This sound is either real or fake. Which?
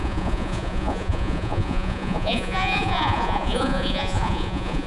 fake